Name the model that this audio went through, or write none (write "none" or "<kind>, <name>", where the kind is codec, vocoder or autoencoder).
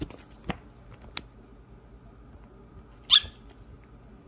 none